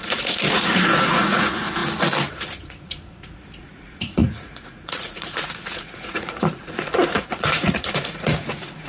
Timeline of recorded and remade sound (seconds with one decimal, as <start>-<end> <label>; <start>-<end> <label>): 0.0-1.8 remade; 1.8-2.3 recorded; 2.3-8.9 remade